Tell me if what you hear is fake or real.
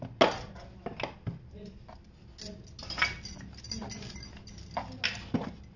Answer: real